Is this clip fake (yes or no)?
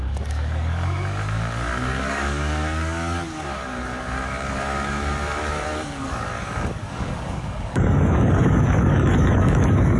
yes